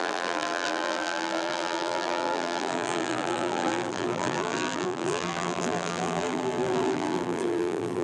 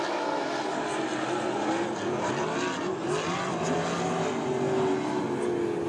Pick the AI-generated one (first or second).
first